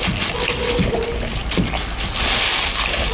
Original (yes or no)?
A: no